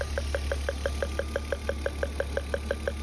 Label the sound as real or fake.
real